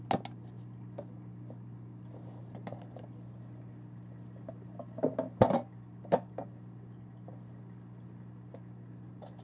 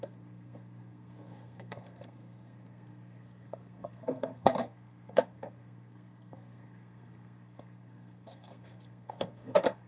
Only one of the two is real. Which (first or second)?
first